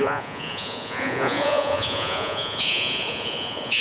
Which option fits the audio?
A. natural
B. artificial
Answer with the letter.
B